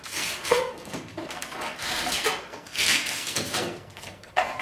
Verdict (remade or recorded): remade